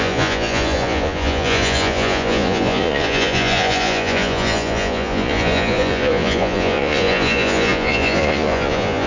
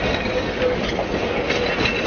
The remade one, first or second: first